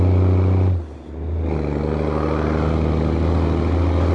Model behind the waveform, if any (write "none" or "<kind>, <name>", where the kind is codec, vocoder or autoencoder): none